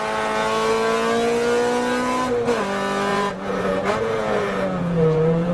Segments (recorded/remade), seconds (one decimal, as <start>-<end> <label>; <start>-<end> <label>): 0.0-3.1 recorded; 3.1-5.5 remade